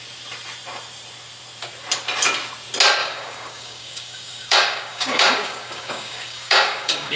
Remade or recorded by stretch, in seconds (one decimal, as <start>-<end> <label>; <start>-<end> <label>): 0.0-3.0 recorded; 3.0-7.2 remade